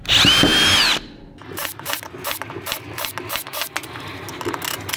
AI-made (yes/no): no